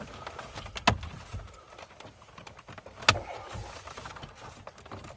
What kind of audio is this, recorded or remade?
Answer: recorded